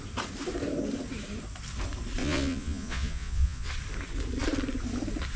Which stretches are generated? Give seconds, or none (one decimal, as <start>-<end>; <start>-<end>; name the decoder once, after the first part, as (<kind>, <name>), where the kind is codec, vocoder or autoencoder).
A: 2.2-3.7 (vocoder, Vocos)